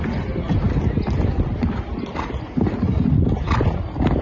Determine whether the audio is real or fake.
real